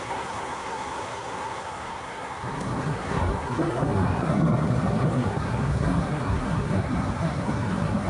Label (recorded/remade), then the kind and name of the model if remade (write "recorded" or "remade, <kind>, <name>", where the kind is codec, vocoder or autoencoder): remade, codec, SNAC